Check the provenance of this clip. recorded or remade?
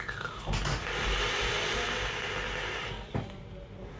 recorded